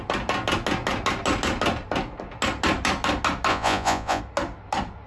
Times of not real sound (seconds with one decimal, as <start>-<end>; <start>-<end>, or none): 3.5-4.2